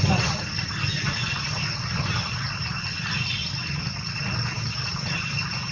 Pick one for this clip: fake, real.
real